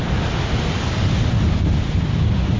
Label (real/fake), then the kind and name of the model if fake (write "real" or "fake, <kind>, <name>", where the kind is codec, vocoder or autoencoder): real